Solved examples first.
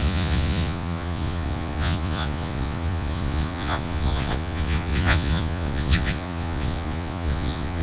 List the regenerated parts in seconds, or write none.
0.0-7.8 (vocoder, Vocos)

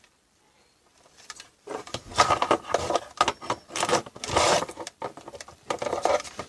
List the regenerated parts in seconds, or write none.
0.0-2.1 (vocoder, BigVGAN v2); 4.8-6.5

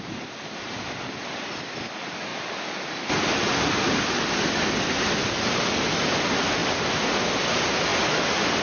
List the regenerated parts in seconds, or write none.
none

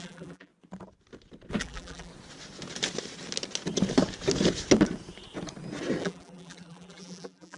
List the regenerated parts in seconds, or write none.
0.0-0.5 (vocoder, BigVGAN v2); 1.6-2.1; 6.0-7.6

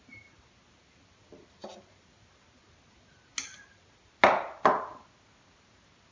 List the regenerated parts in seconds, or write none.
none

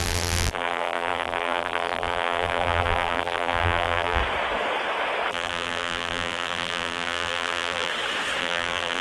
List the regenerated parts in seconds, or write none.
0.0-4.2 (vocoder, BigVGAN v2); 5.3-7.9; 8.4-9.0